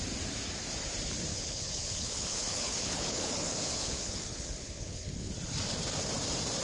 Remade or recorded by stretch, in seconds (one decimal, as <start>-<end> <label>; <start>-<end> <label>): 0.0-1.3 recorded; 1.3-5.3 remade; 5.3-6.6 recorded